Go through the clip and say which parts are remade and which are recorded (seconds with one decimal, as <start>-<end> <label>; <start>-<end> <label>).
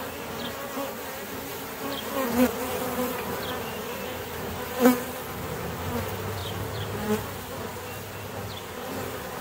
0.0-1.5 recorded; 1.5-3.0 remade; 3.0-6.4 recorded; 6.4-7.2 remade; 7.2-9.4 recorded